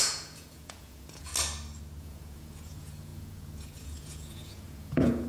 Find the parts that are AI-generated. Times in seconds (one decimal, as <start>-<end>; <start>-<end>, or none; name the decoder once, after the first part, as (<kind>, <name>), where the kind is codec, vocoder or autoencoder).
0.0-1.3 (vocoder, Vocos); 2.0-5.3

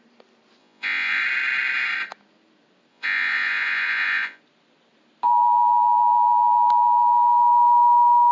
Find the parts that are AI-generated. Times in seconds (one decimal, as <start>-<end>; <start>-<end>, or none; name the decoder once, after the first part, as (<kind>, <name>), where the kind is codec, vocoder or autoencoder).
0.6-1.2 (vocoder, Vocos); 2.9-4.4

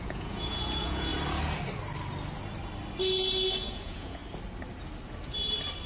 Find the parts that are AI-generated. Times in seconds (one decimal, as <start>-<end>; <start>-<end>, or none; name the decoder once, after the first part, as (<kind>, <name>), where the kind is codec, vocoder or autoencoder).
0.0-1.1 (vocoder, Vocos); 3.0-4.2

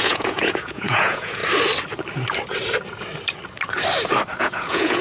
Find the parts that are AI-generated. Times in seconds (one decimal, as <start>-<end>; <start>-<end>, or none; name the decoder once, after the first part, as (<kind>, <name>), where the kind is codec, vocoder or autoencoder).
0.0-1.4 (vocoder, Vocos); 4.4-5.0